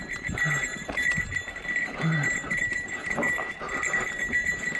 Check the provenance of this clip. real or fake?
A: fake